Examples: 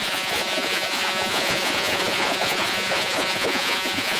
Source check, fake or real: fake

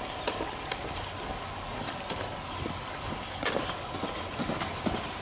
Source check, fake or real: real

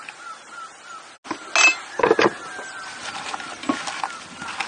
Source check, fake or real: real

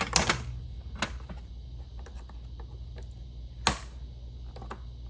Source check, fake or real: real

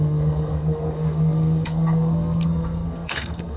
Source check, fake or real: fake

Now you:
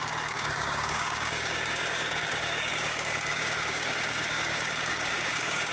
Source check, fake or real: fake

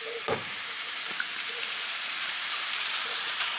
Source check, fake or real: fake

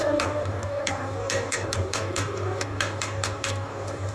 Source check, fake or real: fake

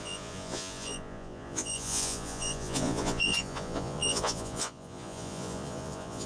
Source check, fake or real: fake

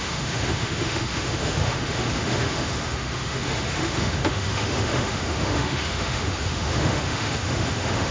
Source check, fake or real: fake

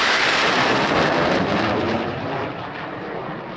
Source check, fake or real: real